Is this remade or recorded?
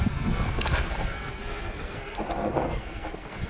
remade